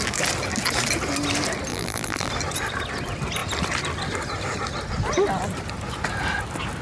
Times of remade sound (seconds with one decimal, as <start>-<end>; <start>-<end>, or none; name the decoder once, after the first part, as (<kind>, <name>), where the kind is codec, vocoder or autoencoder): 1.7-2.3 (vocoder, BigVGAN v2)